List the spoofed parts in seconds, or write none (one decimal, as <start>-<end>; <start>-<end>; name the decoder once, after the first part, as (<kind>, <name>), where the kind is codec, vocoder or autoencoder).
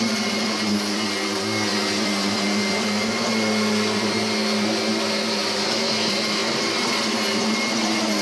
none